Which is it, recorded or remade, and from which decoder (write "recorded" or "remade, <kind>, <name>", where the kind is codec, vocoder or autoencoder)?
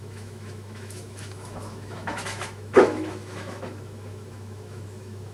remade, autoencoder, DAC-VAE